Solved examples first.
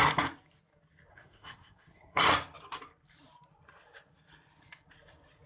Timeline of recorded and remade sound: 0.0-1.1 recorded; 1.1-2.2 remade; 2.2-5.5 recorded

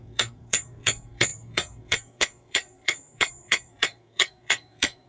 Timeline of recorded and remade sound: 0.0-5.1 remade